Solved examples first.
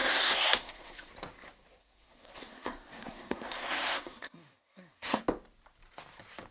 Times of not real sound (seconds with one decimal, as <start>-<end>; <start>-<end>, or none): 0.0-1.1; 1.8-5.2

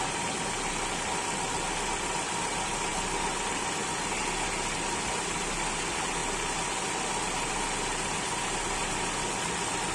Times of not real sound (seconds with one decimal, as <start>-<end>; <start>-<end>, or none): none

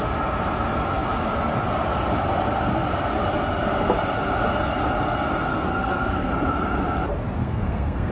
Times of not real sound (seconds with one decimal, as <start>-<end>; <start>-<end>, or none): 5.5-6.3; 7.4-8.1